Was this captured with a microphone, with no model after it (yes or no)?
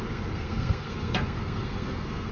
no